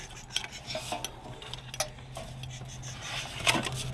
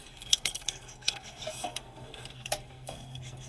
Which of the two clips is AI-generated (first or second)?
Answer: second